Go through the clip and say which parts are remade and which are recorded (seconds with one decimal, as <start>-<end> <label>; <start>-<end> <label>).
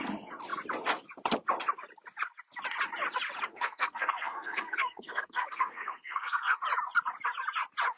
0.0-3.5 recorded; 3.5-6.6 remade; 6.6-8.0 recorded